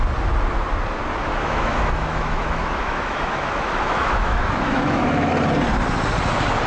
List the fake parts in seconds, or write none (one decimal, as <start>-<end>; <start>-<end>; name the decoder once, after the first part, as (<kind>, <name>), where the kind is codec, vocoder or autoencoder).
1.3-5.3 (autoencoder, DAC-VAE)